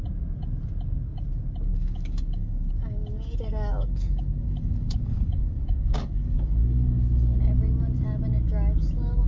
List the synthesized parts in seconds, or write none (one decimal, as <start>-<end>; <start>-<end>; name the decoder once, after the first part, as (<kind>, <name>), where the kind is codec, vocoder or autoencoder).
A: 1.7-2.7 (codec, DAC); 3.1-7.4